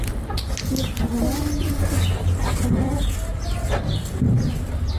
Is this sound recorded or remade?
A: recorded